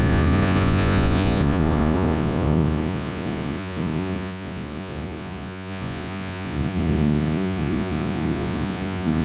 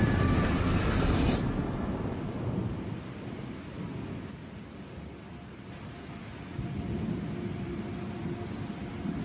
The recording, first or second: second